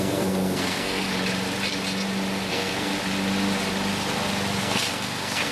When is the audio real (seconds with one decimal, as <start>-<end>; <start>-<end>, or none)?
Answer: 1.1-2.5; 2.9-4.6